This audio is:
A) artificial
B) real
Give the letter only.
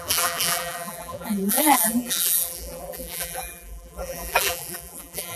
A